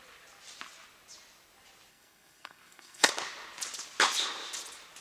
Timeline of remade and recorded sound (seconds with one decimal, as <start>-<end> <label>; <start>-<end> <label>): 0.0-1.9 recorded; 1.9-3.1 remade; 3.1-5.0 recorded